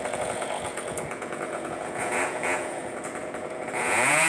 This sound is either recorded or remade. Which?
remade